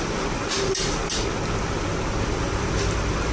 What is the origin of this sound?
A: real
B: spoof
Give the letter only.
A